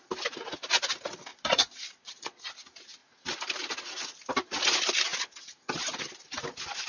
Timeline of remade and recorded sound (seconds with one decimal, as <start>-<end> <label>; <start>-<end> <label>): 0.0-1.3 recorded; 1.3-2.5 remade; 2.5-6.9 recorded